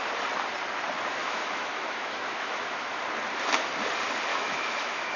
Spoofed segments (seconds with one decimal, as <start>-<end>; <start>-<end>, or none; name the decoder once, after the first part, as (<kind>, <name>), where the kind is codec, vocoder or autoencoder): 1.2-3.0 (autoencoder, DAC-VAE); 4.3-5.2